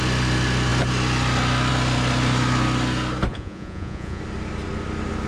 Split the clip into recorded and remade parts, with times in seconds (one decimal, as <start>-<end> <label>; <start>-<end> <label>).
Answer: 0.0-3.3 recorded; 3.3-4.2 remade; 4.2-5.3 recorded